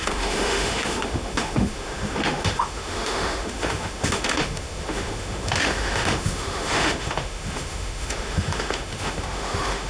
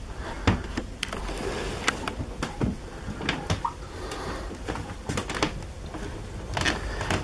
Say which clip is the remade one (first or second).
first